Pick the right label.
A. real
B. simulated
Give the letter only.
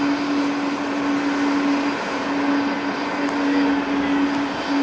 A